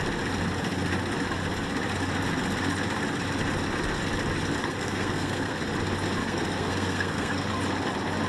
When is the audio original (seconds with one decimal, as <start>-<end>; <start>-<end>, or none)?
0.0-4.6; 5.6-6.2; 7.4-8.3